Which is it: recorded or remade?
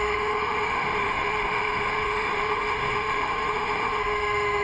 remade